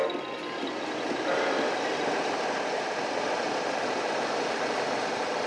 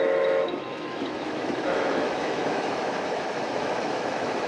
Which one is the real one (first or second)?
first